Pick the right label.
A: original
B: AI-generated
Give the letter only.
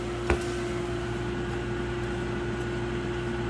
A